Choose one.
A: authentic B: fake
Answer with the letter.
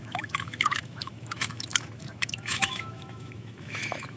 B